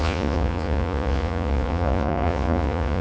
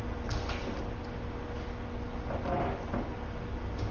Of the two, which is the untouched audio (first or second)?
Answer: second